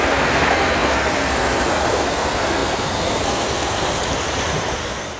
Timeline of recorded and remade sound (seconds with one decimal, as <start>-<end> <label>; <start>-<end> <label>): 0.0-4.0 remade; 4.0-4.8 recorded; 4.8-5.2 remade